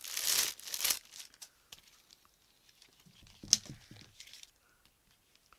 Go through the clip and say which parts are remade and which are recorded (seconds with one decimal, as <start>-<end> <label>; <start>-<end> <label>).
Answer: 0.0-5.6 recorded